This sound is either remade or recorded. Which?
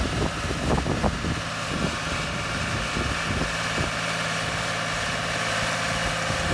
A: recorded